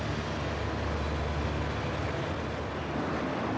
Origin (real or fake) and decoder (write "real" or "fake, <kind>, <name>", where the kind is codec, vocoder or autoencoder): real